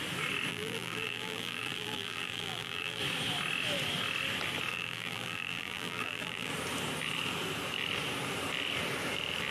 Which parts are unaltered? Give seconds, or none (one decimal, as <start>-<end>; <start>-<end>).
0.0-0.5; 3.0-4.7; 6.5-9.5